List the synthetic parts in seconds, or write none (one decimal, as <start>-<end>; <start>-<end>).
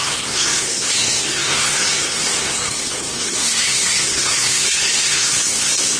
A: 0.0-6.0